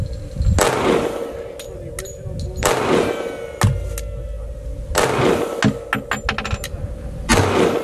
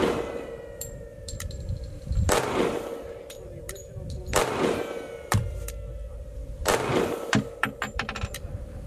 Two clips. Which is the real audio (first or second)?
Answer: first